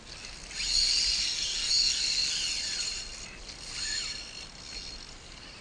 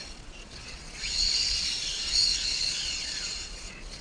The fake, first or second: second